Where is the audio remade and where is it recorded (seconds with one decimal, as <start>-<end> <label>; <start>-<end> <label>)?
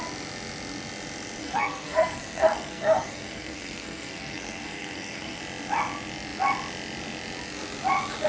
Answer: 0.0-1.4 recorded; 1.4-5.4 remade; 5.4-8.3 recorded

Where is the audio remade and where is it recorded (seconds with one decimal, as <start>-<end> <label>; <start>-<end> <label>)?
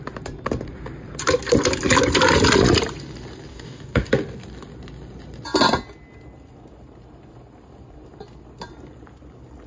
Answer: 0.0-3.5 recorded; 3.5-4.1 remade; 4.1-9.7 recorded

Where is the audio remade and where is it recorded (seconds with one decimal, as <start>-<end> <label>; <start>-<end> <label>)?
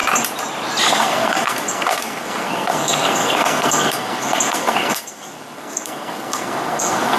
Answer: 0.0-0.9 recorded; 0.9-7.2 remade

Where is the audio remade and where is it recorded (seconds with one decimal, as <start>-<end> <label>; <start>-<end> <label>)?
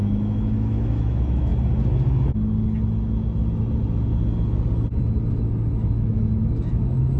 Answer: 0.0-1.5 remade; 1.5-5.3 recorded; 5.3-7.2 remade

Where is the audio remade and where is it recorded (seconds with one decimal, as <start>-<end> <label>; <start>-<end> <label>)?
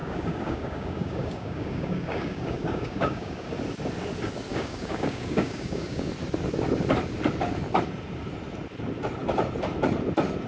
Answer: 0.0-3.5 remade; 3.5-4.5 recorded; 4.5-6.1 remade; 6.1-10.5 recorded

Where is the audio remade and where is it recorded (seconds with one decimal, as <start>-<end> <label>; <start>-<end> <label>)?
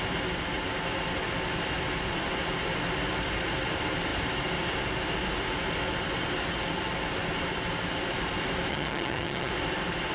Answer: 0.0-8.7 recorded; 8.7-9.5 remade; 9.5-10.1 recorded